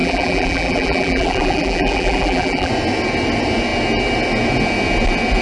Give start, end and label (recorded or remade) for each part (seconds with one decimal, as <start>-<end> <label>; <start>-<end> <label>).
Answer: 0.0-2.7 remade; 2.7-5.4 recorded